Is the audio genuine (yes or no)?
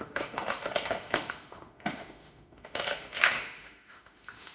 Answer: no